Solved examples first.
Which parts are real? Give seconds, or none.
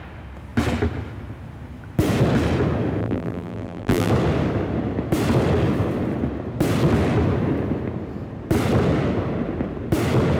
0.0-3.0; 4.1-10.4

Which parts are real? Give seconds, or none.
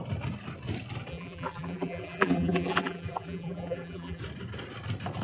0.0-1.1; 4.2-5.2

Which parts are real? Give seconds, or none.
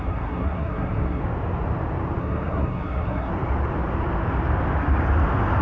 1.2-2.2; 3.3-5.6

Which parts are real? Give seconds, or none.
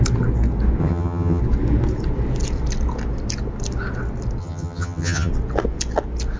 0.0-0.8; 1.4-4.4; 5.3-6.4